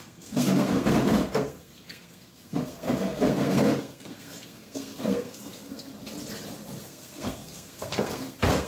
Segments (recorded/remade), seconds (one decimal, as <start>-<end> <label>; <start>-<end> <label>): 0.0-5.9 remade; 5.9-6.8 recorded; 6.8-8.7 remade

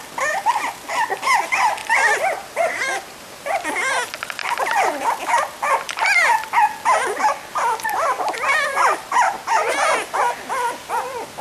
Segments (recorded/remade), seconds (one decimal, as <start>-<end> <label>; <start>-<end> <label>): 0.0-1.8 recorded; 1.8-3.9 remade; 3.9-4.4 recorded; 4.4-4.9 remade; 4.9-8.5 recorded; 8.5-10.2 remade; 10.2-11.4 recorded

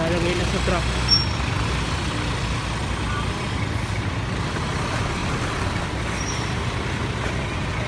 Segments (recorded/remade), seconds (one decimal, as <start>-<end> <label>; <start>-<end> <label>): 0.0-7.9 recorded

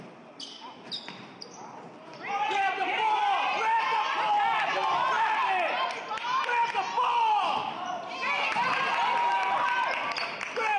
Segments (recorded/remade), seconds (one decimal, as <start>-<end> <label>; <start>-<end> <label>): 0.0-2.1 recorded; 2.1-3.2 remade; 3.2-10.8 recorded